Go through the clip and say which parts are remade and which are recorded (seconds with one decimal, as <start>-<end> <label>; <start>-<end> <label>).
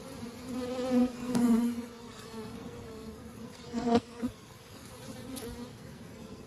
0.0-1.0 recorded; 1.0-4.9 remade; 4.9-5.7 recorded; 5.7-6.5 remade